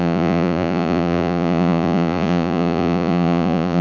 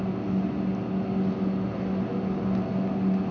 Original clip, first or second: second